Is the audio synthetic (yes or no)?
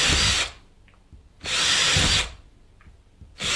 no